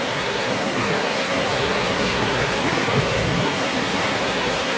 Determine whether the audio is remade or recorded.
remade